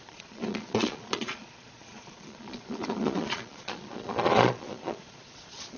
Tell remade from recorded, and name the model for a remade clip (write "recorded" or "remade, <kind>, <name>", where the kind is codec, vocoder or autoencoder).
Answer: remade, vocoder, Vocos